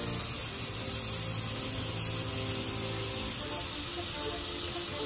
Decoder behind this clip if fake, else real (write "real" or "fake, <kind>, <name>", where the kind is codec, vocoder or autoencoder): real